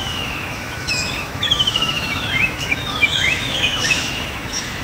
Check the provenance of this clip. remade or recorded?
remade